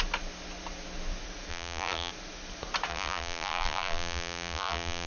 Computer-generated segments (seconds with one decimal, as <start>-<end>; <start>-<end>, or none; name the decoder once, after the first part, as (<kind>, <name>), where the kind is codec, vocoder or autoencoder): 1.5-2.1 (vocoder, BigVGAN v2); 2.9-5.1